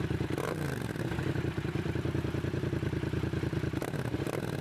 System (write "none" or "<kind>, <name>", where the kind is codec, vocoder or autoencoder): vocoder, BigVGAN v2